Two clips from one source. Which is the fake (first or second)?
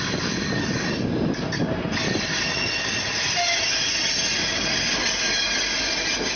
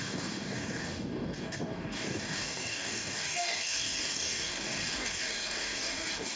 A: second